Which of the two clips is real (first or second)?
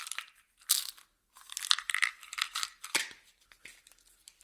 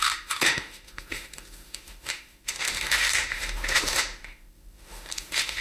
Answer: first